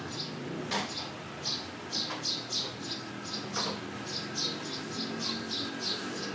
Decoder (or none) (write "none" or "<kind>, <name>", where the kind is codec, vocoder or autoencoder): none